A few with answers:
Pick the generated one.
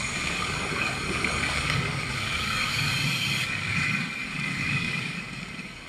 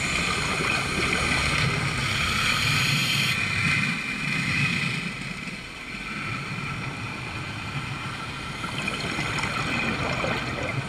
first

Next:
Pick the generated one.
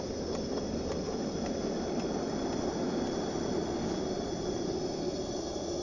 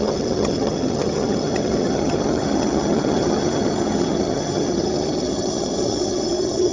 second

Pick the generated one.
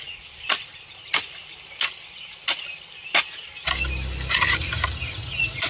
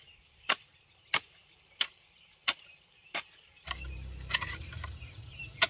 second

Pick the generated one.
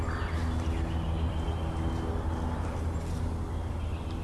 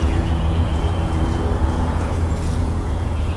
second